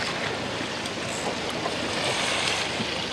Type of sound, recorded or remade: recorded